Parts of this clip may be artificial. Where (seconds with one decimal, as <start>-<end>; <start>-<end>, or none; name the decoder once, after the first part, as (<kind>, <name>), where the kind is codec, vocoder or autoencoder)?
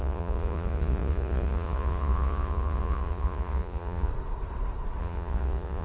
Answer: 0.0-4.1 (vocoder, Vocos); 5.0-5.8